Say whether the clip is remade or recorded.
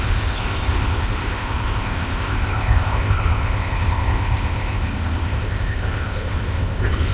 remade